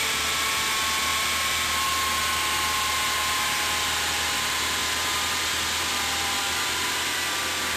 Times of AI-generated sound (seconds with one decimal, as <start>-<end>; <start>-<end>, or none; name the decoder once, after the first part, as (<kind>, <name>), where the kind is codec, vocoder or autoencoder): none